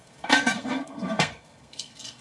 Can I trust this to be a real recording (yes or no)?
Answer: no